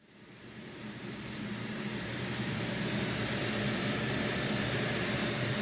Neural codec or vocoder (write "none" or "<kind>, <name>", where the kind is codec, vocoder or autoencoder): vocoder, BigVGAN v2